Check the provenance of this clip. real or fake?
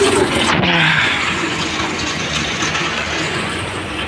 fake